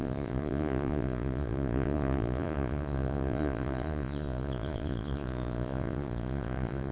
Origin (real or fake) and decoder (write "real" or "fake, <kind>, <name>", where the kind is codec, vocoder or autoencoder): fake, vocoder, Vocos